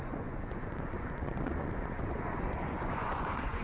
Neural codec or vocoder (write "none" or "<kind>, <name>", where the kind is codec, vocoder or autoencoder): vocoder, Vocos